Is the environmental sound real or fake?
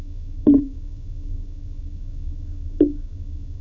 fake